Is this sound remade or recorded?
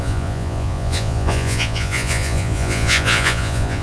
remade